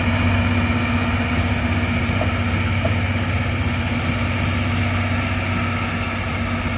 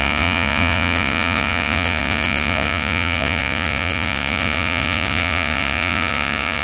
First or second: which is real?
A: first